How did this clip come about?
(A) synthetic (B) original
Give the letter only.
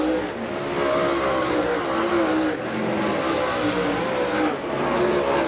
B